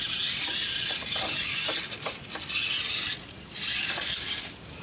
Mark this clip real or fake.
fake